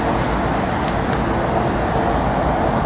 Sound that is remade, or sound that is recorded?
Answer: recorded